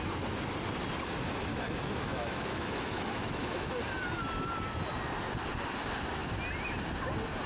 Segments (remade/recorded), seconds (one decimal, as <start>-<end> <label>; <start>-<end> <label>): 0.0-1.5 recorded; 1.5-3.7 remade; 3.7-7.5 recorded